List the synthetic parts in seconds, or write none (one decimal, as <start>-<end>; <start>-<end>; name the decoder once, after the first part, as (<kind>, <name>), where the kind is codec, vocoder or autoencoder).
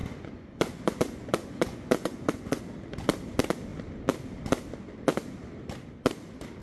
0.0-2.6 (vocoder, Vocos)